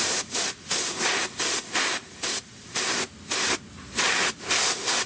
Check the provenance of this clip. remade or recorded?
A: recorded